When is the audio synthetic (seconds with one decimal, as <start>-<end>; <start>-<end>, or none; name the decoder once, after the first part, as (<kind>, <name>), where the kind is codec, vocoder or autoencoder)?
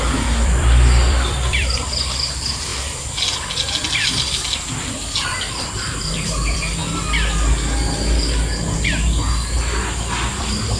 0.0-2.7 (vocoder, BigVGAN v2); 5.5-6.8; 10.3-10.8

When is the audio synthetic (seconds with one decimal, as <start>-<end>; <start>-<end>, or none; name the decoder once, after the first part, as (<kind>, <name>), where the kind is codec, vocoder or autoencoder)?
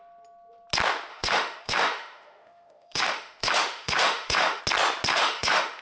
1.1-4.6 (autoencoder, DAC-VAE); 5.1-5.8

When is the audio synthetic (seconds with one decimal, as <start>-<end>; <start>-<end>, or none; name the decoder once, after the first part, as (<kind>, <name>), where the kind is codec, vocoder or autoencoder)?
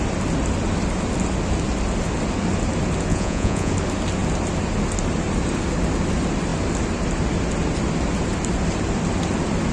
3.1-3.7 (vocoder, Vocos)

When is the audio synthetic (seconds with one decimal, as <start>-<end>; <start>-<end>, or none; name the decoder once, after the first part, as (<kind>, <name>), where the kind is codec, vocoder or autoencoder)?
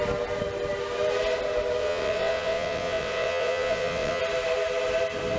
1.8-4.2 (vocoder, WaveNeXt)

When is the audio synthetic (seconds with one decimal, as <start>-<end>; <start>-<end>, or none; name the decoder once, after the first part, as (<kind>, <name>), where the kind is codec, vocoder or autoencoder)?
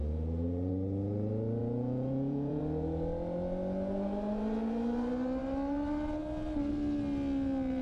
0.0-0.7 (vocoder, Vocos); 1.6-2.6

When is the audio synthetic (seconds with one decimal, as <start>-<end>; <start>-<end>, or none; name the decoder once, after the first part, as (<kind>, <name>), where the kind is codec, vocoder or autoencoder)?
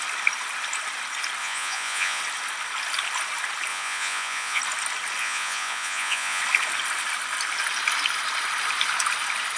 1.4-2.2 (vocoder, Vocos); 3.7-4.6; 5.2-6.4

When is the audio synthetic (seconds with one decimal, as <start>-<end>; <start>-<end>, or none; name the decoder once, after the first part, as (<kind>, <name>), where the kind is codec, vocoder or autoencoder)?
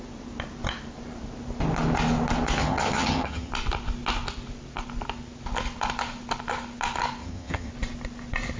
2.6-3.5 (vocoder, HiFi-GAN); 7.2-7.7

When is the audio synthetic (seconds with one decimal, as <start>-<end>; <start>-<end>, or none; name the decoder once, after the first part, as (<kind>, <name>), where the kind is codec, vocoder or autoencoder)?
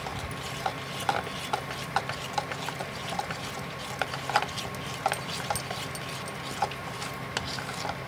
none